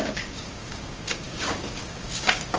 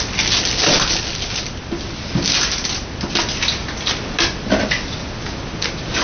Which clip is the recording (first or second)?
second